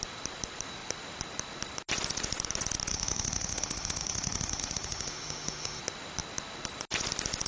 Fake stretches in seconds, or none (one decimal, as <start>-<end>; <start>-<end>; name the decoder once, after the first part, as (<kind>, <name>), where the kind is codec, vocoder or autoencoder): 2.9-5.8 (autoencoder, DAC-VAE)